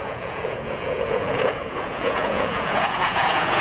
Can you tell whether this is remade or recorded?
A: remade